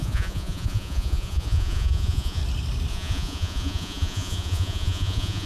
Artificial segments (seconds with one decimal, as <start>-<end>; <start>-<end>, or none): 0.0-2.4; 2.9-5.5